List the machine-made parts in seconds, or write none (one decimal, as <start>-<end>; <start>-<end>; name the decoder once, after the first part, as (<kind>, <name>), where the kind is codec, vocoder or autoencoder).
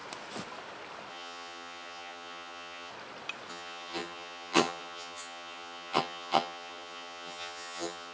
1.1-2.9 (vocoder, HiFi-GAN); 3.5-8.1